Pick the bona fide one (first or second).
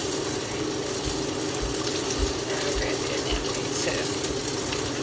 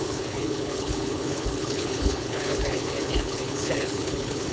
first